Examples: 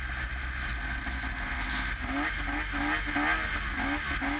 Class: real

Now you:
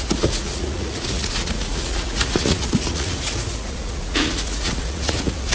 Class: fake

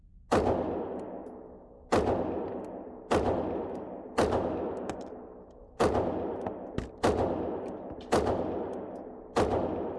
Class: real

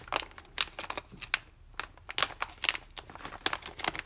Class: real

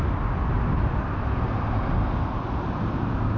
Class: real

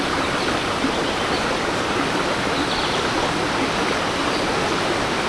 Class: real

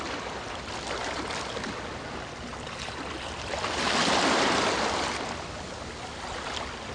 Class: real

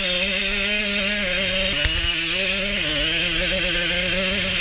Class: real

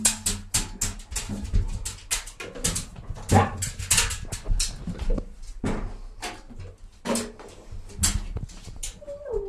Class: real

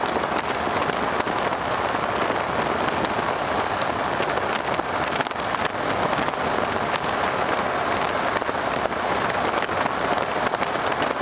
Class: real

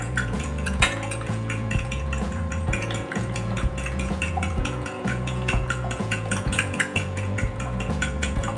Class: fake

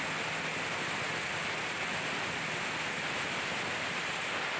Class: real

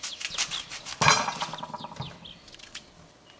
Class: real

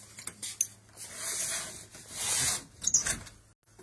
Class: real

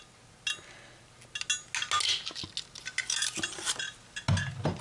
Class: real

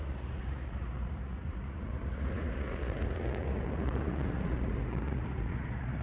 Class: fake